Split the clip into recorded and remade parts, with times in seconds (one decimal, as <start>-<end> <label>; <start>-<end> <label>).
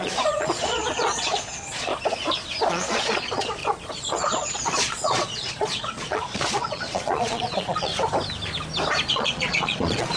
0.0-1.9 remade; 1.9-2.7 recorded; 2.7-3.6 remade; 3.6-4.1 recorded; 4.1-7.9 remade; 7.9-9.1 recorded; 9.1-10.2 remade